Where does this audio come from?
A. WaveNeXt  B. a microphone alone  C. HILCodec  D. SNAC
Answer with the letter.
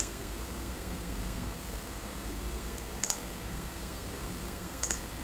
D